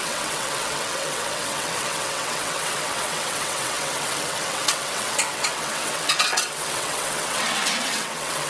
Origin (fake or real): fake